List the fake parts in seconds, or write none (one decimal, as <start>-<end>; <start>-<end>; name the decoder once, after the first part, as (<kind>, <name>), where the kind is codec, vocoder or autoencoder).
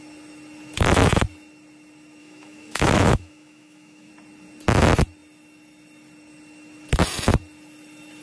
2.2-4.1 (autoencoder, DAC-VAE)